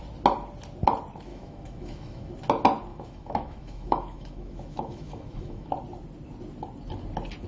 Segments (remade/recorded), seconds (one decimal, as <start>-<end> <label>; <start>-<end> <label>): 0.0-1.3 recorded; 1.3-2.3 remade; 2.3-2.9 recorded; 2.9-5.7 remade; 5.7-7.5 recorded